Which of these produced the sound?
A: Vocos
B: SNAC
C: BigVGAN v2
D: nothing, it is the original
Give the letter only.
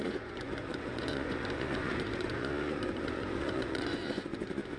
A